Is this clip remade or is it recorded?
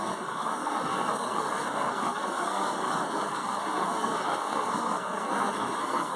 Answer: remade